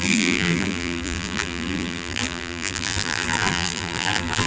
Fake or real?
fake